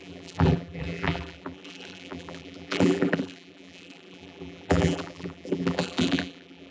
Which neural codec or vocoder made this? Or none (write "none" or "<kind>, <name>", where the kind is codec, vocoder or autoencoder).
vocoder, BigVGAN v2